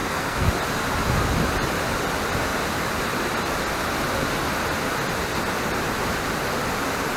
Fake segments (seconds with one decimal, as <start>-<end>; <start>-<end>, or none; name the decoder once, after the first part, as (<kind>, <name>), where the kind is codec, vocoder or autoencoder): 0.0-0.5 (codec, SNAC)